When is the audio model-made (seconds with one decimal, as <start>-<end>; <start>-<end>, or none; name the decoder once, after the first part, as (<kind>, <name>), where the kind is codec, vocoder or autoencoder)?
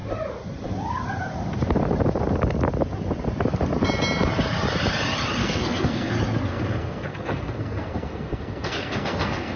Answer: 5.4-6.1 (codec, SNAC); 6.5-9.6